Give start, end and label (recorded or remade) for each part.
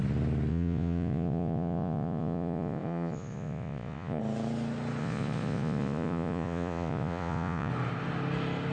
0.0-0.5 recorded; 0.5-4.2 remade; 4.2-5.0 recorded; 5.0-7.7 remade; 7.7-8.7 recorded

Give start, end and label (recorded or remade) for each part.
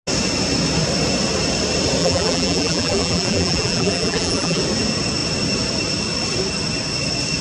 0.0-2.0 recorded; 2.0-4.6 remade; 4.6-7.4 recorded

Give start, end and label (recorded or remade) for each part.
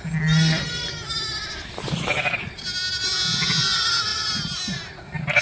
0.0-5.4 recorded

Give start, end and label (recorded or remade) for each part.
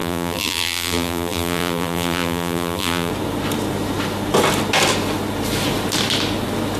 0.0-3.1 remade; 3.1-6.8 recorded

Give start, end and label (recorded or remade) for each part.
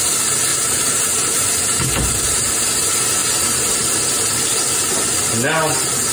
0.0-0.5 recorded; 0.5-2.0 remade; 2.0-3.2 recorded; 3.2-3.7 remade; 3.7-6.1 recorded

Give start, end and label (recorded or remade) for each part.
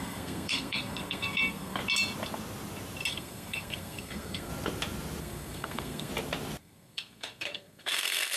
0.0-1.8 remade; 1.8-3.1 recorded; 3.1-4.5 remade; 4.5-5.2 recorded; 5.2-6.1 remade; 6.1-6.6 recorded; 6.6-8.4 remade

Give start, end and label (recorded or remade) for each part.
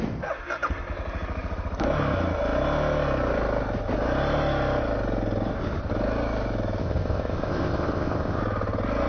0.0-6.8 recorded; 6.8-8.4 remade; 8.4-9.1 recorded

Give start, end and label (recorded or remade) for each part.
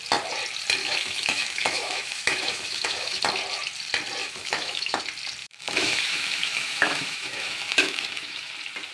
0.0-0.8 recorded; 0.8-3.2 remade; 3.2-4.2 recorded; 4.2-5.0 remade; 5.0-5.4 recorded; 5.4-8.5 remade; 8.5-8.9 recorded